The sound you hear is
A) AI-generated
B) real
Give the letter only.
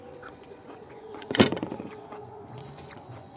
A